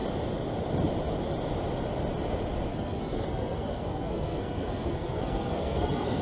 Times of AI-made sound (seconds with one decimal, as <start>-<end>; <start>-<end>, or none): 2.7-6.2